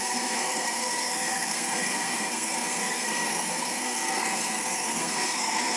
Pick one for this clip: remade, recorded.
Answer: remade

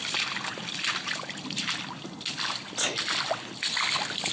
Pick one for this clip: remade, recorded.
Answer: recorded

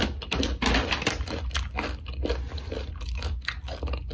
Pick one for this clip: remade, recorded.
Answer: recorded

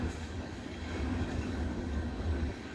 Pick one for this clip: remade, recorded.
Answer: remade